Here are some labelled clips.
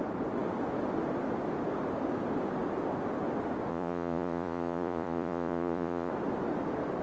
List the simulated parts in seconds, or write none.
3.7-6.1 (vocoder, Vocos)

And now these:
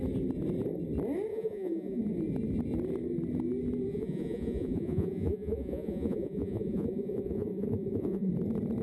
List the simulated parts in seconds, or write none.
1.3-2.0 (vocoder, Vocos); 3.9-8.3

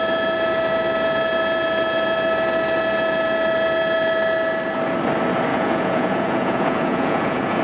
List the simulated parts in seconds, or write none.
5.5-7.6 (vocoder, Vocos)

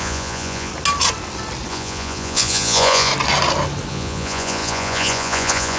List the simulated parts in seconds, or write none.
0.0-0.7 (vocoder, Vocos); 1.7-3.1; 3.9-5.8

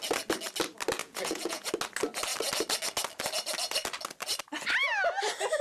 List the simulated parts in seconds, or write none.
1.0-1.7 (vocoder, Vocos)

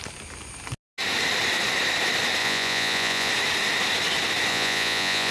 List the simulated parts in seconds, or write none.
2.4-3.3 (vocoder, Vocos); 4.5-5.3

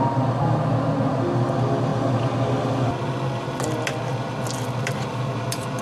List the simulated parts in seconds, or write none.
none

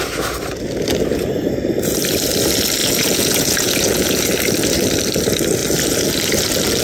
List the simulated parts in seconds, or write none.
2.8-4.2 (vocoder, Vocos)